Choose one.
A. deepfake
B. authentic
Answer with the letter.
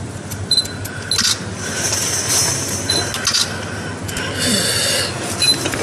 B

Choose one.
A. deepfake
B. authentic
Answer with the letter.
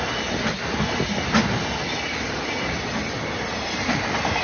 B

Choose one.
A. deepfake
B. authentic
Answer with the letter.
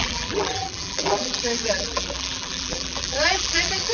A